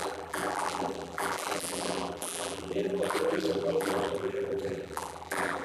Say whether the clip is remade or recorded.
remade